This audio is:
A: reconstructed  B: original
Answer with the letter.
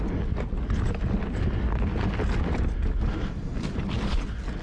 B